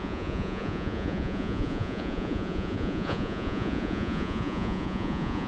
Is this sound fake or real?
fake